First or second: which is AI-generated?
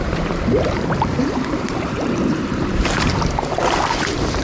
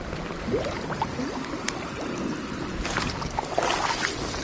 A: first